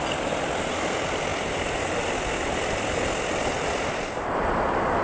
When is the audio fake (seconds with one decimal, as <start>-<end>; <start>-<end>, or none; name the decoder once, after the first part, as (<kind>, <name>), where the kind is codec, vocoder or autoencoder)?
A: none